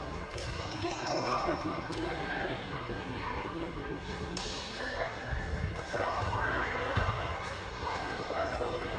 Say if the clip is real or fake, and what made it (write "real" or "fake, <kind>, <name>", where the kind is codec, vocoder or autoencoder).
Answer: fake, codec, SNAC